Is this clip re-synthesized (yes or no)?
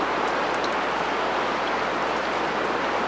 no